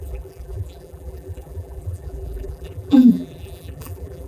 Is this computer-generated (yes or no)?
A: yes